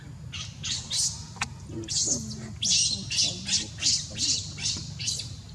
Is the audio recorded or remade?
recorded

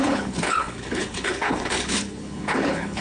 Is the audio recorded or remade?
remade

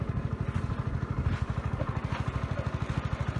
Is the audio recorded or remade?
recorded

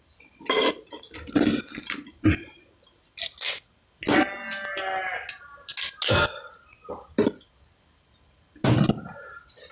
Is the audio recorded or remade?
recorded